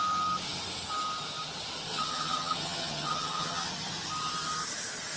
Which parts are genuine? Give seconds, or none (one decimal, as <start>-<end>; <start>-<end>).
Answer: 0.0-1.9; 3.7-5.2